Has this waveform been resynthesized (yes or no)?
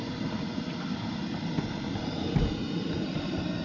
no